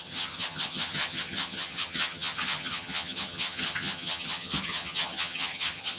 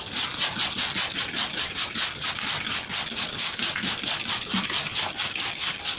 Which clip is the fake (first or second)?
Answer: first